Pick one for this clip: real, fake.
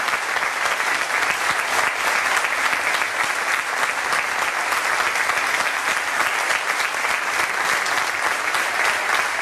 real